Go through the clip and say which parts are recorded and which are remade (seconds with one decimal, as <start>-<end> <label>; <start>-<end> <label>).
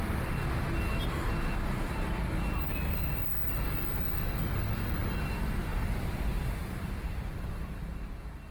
0.0-5.7 recorded; 5.7-7.5 remade; 7.5-8.5 recorded